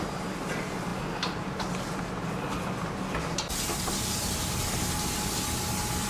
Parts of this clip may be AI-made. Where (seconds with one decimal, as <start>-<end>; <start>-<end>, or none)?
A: none